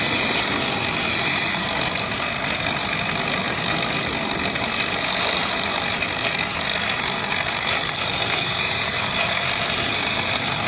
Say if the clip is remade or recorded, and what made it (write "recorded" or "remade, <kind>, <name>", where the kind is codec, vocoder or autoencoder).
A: recorded